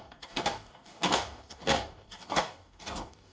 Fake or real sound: fake